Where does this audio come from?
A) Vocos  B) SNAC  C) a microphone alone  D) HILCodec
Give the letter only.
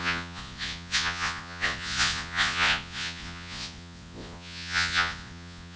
A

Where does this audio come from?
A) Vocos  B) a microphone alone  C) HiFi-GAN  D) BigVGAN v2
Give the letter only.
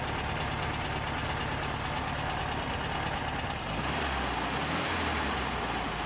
B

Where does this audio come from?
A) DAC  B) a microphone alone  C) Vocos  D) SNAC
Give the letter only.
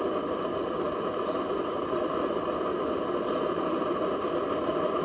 B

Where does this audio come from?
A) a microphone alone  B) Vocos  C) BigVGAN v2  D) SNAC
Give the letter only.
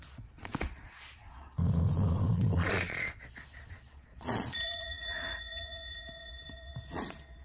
B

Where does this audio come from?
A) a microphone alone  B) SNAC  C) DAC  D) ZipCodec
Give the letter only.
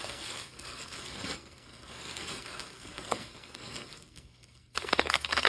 B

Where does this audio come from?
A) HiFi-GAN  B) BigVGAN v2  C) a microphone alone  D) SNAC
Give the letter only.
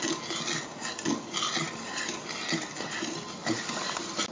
C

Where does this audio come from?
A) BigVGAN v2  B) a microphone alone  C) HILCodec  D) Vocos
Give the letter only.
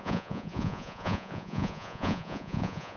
D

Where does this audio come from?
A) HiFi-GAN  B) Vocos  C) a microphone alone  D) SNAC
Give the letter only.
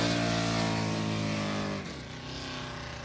C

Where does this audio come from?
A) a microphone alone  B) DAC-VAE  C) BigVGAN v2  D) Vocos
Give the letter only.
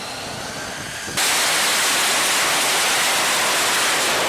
A